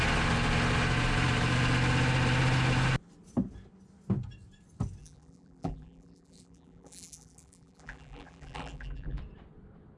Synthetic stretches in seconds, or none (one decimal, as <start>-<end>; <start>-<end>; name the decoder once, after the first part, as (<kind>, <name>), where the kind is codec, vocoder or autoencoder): 5.0-9.2 (vocoder, BigVGAN v2)